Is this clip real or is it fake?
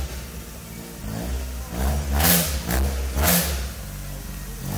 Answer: real